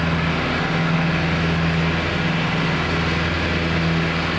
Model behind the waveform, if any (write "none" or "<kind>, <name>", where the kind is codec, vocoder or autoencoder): none